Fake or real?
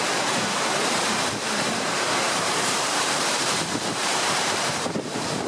fake